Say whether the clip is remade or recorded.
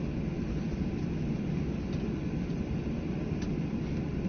recorded